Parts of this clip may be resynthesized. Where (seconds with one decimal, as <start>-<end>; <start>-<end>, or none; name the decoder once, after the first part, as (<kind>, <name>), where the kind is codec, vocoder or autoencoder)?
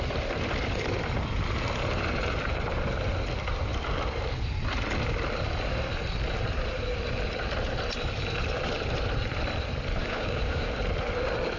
10.0-10.7 (codec, DAC)